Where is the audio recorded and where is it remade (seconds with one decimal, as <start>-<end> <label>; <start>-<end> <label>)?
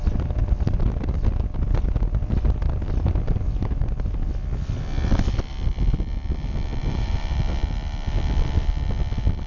0.0-6.8 recorded; 6.8-7.4 remade; 7.4-9.5 recorded